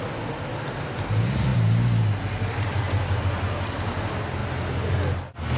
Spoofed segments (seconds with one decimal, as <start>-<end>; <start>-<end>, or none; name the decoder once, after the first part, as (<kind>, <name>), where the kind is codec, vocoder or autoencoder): none